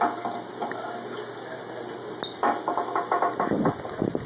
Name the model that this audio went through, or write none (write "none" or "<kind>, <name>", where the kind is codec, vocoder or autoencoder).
none